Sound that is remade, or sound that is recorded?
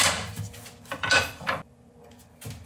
recorded